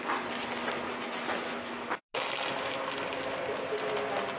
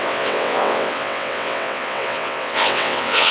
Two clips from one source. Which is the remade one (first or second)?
second